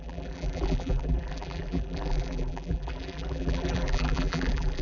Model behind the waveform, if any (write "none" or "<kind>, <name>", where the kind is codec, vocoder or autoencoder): vocoder, BigVGAN v2